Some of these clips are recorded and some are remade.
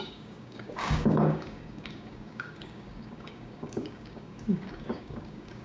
remade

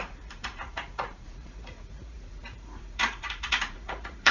remade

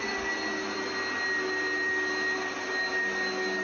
recorded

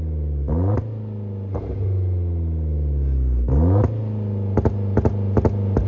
recorded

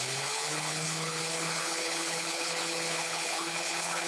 remade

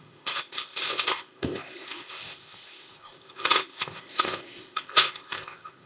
remade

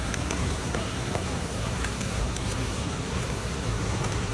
remade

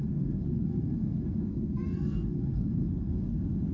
remade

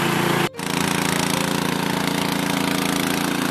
recorded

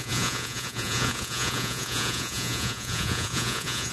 remade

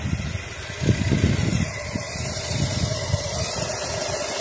recorded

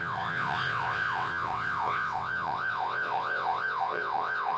remade